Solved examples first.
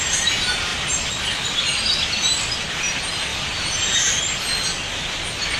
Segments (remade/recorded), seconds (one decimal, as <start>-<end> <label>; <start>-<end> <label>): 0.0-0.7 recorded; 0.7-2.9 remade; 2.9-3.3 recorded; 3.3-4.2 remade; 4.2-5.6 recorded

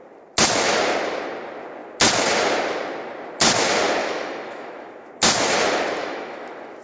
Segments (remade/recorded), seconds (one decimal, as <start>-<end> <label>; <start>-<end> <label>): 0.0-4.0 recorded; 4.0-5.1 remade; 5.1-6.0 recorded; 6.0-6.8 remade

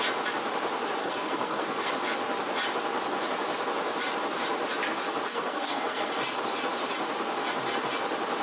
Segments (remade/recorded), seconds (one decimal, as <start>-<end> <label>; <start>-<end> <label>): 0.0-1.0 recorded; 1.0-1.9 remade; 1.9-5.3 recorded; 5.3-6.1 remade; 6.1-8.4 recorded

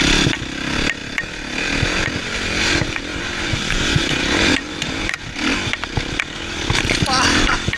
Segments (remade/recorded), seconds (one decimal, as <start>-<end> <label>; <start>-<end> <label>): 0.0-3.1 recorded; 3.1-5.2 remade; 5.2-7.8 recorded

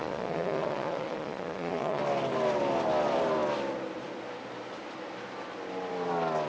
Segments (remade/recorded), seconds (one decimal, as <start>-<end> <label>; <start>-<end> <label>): 0.0-2.0 remade; 2.0-6.5 recorded

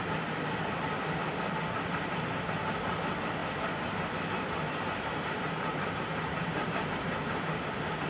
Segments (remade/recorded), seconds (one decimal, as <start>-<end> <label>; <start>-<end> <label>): 0.0-3.4 recorded; 3.4-4.1 remade; 4.1-5.7 recorded; 5.7-7.3 remade; 7.3-8.1 recorded

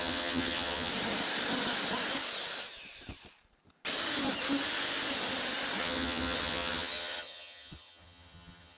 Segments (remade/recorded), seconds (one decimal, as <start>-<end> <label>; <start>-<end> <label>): 0.0-0.9 remade; 0.9-5.8 recorded; 5.8-8.8 remade

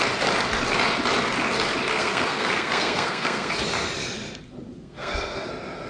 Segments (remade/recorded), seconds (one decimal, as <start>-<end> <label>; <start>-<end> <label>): 0.0-1.9 recorded; 1.9-3.5 remade; 3.5-4.8 recorded; 4.8-5.5 remade; 5.5-5.9 recorded